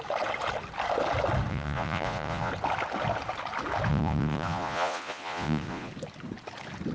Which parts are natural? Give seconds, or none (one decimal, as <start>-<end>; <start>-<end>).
0.0-1.5; 2.5-3.9; 5.9-6.9